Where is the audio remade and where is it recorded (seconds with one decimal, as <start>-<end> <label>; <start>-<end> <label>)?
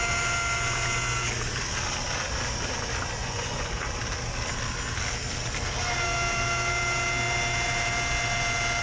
0.0-3.2 recorded; 3.2-3.7 remade; 3.7-8.8 recorded